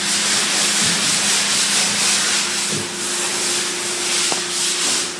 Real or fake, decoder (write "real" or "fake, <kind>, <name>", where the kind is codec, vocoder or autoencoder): real